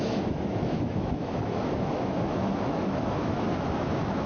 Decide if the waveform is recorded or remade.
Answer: remade